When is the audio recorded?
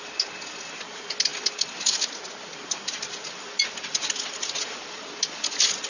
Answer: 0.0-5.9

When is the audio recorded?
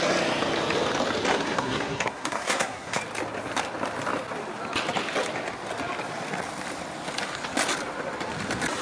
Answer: 0.0-1.3; 3.0-8.8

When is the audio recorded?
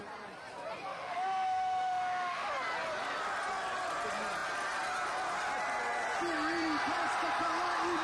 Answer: 0.0-0.9; 2.5-8.0